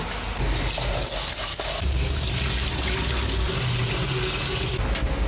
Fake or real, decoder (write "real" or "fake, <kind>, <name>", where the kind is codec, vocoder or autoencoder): real